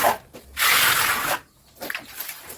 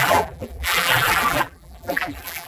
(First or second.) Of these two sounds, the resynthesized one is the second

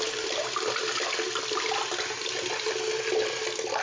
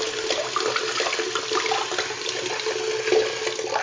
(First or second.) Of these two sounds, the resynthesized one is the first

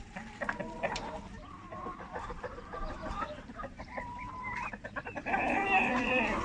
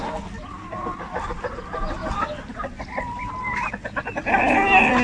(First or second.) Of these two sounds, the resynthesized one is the first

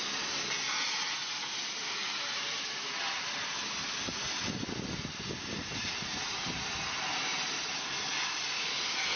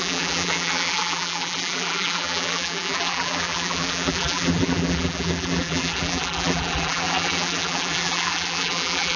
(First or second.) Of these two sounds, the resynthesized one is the second